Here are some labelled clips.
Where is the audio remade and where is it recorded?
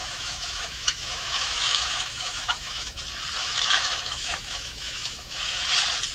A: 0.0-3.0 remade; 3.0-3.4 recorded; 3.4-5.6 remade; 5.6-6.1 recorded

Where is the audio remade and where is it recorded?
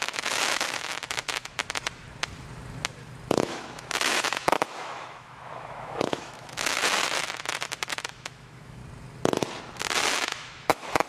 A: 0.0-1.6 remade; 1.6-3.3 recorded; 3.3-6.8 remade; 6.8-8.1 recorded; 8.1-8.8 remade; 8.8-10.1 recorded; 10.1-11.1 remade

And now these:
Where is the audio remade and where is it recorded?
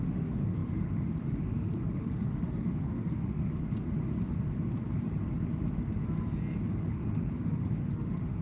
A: 0.0-3.5 remade; 3.5-6.9 recorded; 6.9-8.4 remade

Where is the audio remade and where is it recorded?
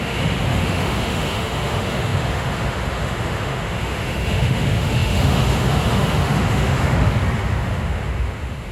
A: 0.0-8.7 remade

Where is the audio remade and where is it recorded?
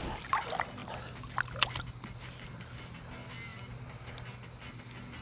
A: 0.0-5.2 recorded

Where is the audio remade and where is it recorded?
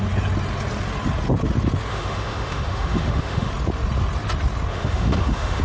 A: 0.0-1.9 recorded; 1.9-3.5 remade; 3.5-4.7 recorded; 4.7-5.6 remade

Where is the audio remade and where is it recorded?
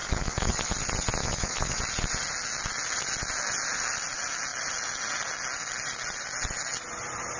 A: 0.0-0.7 remade; 0.7-1.2 recorded; 1.2-1.8 remade; 1.8-7.4 recorded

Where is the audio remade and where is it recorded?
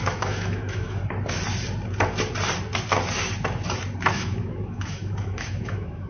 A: 0.0-1.0 remade; 1.0-4.1 recorded; 4.1-6.1 remade